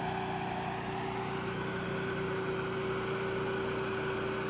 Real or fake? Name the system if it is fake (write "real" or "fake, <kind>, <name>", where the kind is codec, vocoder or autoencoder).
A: real